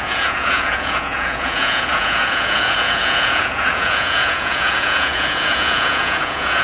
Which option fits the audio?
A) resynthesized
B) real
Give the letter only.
A